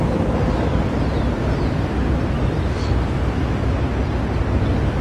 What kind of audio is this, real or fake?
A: real